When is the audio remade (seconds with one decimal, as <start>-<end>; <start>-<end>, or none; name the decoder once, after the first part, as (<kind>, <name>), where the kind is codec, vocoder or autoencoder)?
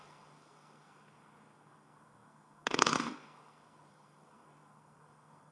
0.0-5.5 (codec, SNAC)